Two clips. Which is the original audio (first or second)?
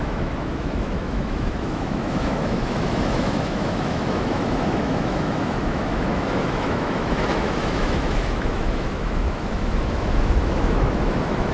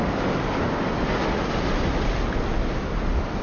second